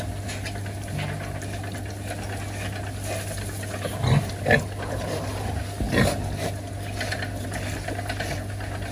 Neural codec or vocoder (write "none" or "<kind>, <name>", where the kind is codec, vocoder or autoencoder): none